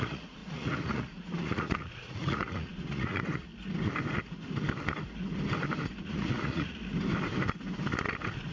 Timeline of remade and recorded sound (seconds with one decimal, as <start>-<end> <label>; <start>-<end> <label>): 0.0-3.5 remade; 3.5-6.0 recorded; 6.0-6.8 remade; 6.8-8.5 recorded